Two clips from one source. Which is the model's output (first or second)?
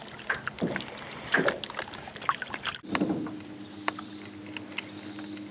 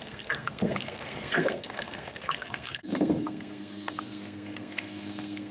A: second